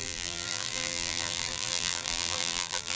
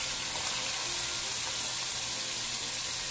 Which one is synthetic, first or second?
first